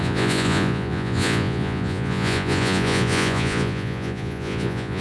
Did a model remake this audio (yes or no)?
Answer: yes